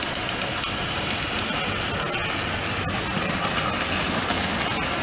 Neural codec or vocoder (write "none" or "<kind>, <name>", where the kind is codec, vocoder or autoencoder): none